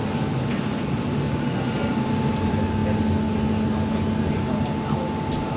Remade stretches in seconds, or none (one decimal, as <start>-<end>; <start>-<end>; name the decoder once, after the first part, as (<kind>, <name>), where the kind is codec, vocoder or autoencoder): none

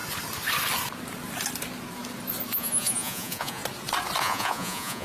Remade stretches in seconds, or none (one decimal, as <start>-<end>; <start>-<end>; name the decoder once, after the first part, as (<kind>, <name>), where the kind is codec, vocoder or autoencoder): 2.5-3.6 (vocoder, Vocos); 4.2-5.0

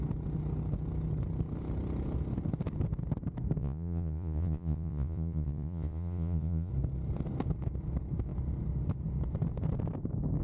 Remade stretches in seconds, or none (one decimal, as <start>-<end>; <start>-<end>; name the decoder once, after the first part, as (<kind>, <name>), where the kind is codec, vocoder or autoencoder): 3.6-6.7 (vocoder, Vocos)

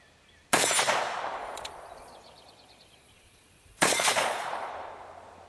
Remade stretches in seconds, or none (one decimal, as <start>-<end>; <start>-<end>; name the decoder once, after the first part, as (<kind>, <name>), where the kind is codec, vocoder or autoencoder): 1.4-4.7 (vocoder, Vocos)

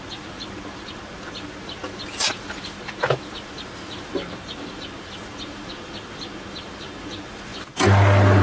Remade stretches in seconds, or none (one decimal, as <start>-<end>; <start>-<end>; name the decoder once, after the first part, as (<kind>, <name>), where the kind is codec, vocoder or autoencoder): none

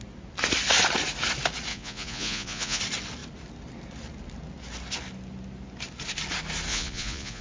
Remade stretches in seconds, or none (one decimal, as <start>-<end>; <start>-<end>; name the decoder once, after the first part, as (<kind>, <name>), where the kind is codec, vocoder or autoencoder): 1.7-2.8 (vocoder, Vocos); 6.7-7.4